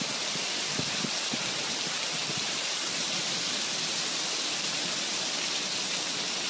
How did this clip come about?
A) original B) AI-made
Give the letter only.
A